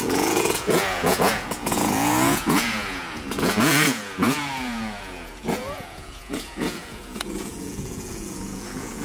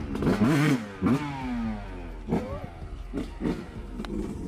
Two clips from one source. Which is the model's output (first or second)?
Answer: first